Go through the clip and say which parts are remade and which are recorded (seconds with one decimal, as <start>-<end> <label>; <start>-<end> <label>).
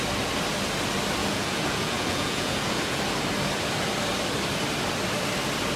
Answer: 0.0-1.2 recorded; 1.2-3.0 remade; 3.0-5.8 recorded